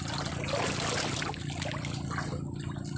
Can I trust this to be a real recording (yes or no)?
yes